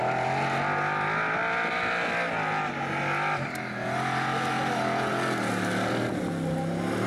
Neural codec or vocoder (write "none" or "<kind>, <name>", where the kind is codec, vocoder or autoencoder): none